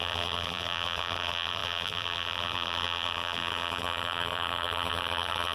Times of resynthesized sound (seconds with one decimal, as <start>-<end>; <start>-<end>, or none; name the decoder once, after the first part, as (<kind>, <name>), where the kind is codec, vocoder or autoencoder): 0.0-5.5 (vocoder, BigVGAN v2)